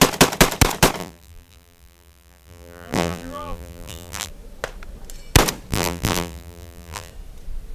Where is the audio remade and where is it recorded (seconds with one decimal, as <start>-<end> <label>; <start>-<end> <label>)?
0.0-1.0 recorded; 1.0-4.3 remade; 4.3-5.7 recorded; 5.7-7.1 remade; 7.1-7.7 recorded